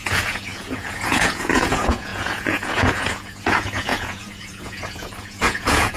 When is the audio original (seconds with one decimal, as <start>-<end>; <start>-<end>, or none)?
none